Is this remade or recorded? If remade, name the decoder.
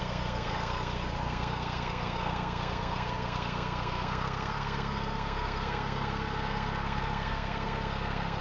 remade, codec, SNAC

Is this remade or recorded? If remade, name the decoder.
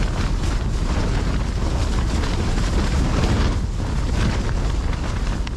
recorded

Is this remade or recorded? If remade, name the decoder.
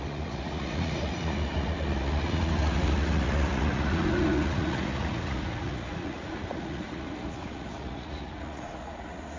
remade, vocoder, Vocos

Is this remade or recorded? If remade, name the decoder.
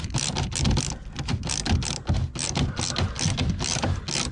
recorded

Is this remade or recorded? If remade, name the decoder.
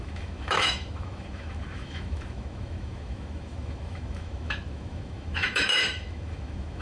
remade, autoencoder, DAC-VAE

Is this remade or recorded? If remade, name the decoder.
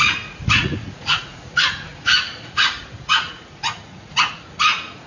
remade, vocoder, Vocos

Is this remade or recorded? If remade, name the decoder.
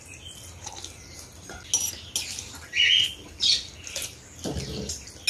recorded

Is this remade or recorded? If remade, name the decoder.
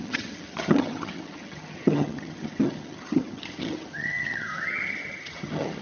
remade, vocoder, HiFi-GAN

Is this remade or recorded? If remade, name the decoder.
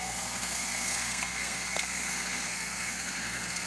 remade, codec, SNAC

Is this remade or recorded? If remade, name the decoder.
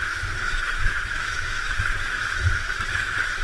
remade, autoencoder, DAC-VAE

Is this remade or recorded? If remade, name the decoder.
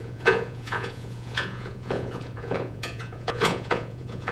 remade, vocoder, Vocos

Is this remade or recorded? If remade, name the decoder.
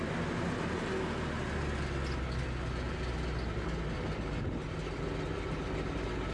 recorded